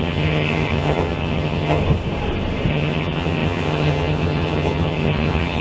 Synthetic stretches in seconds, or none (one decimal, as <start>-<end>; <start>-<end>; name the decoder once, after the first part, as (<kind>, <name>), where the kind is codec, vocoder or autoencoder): 0.0-1.8 (vocoder, HiFi-GAN); 2.7-5.6